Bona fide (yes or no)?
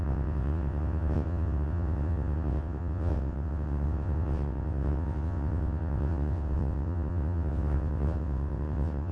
no